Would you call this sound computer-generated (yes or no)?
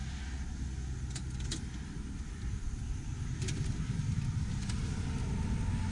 no